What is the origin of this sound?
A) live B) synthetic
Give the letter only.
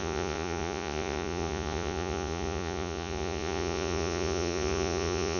B